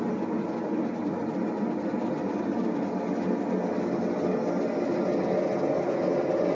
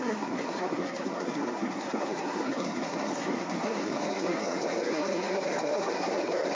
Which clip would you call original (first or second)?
first